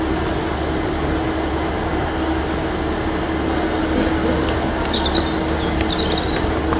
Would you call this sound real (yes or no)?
yes